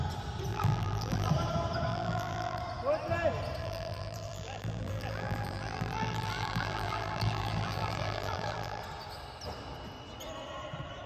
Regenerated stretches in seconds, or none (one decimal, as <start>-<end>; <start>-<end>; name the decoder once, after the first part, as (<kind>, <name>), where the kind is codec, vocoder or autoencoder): 0.5-1.3 (vocoder, BigVGAN v2); 1.9-2.6; 3.6-8.8